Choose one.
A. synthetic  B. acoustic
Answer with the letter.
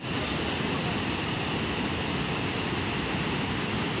B